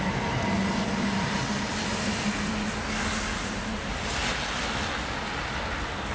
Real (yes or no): yes